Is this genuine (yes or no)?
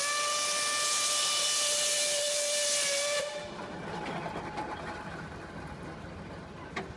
yes